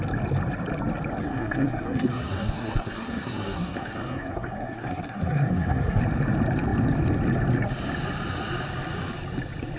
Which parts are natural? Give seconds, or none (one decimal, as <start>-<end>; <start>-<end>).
0.0-1.2; 6.0-9.8